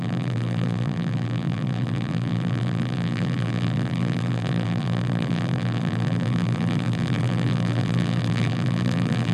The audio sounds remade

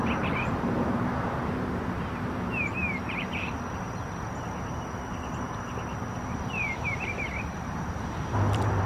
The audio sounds remade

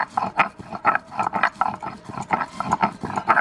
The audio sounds recorded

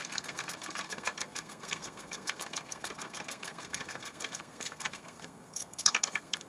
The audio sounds remade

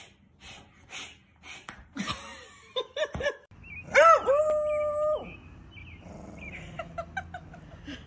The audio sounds recorded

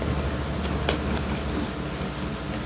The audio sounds recorded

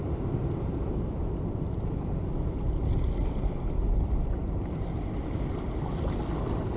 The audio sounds recorded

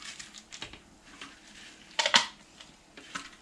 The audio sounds recorded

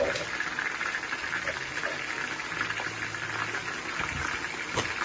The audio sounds recorded